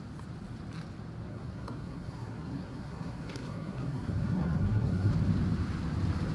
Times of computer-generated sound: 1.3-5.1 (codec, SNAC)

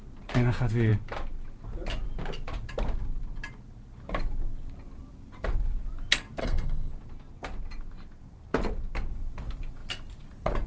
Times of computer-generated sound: 6.4-6.9 (codec, SNAC)

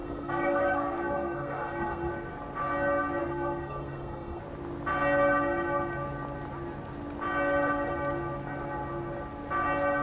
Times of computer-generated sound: 0.0-2.1 (codec, SNAC); 3.2-4.4

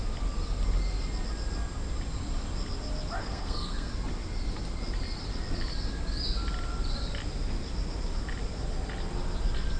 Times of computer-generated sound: 3.2-3.9 (codec, SNAC)

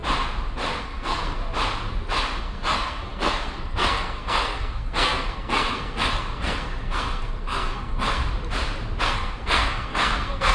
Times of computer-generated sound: 0.8-1.4 (codec, SNAC); 2.4-8.2; 9.0-10.5

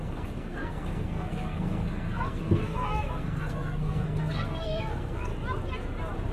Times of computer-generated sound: 0.0-5.3 (codec, SNAC)

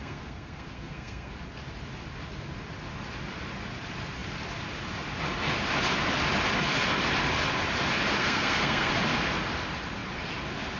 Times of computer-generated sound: 0.0-1.3 (codec, SNAC); 8.2-8.9